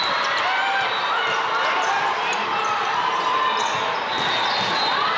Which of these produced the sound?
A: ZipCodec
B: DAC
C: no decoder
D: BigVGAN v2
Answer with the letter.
C